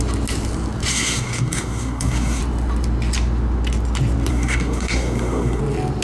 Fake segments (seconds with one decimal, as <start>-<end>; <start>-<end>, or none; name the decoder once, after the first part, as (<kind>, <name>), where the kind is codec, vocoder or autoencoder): 0.9-2.4 (codec, SNAC); 4.3-5.6